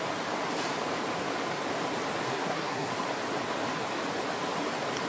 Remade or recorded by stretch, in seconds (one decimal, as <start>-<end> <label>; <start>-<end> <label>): 0.0-2.3 recorded; 2.3-2.9 remade; 2.9-5.1 recorded